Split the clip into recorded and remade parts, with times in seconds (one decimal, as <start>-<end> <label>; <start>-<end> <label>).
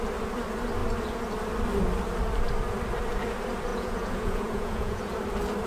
0.0-3.7 recorded; 3.7-5.0 remade; 5.0-5.7 recorded